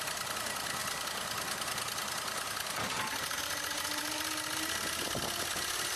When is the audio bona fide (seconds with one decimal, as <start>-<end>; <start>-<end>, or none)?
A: 0.0-6.0